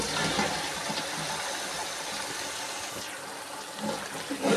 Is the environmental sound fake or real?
real